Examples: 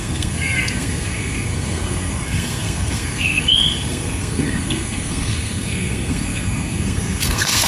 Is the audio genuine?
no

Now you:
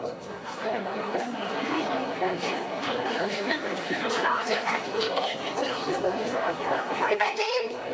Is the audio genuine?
no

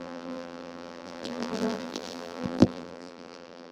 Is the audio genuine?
no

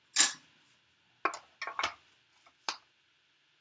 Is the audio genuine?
yes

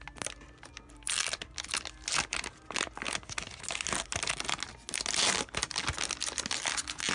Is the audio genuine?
yes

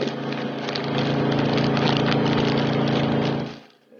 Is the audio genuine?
yes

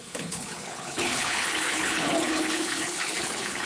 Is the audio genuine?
no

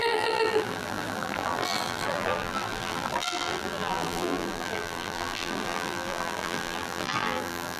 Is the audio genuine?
no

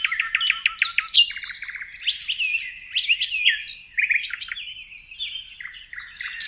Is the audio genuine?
yes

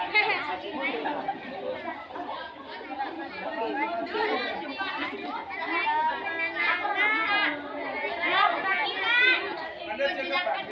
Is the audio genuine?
yes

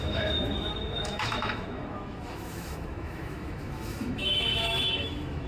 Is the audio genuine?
no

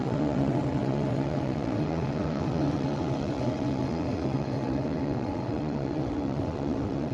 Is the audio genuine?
no